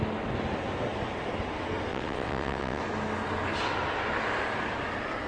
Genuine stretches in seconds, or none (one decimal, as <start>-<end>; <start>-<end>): 0.0-1.9; 2.8-5.3